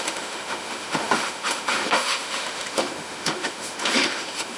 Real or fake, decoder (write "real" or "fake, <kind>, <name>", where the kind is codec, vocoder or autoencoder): fake, autoencoder, DAC-VAE